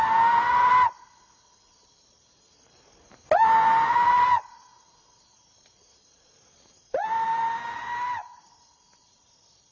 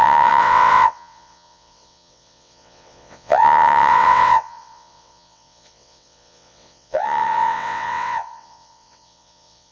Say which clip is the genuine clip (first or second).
first